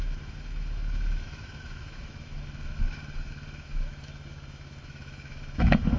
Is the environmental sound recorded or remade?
remade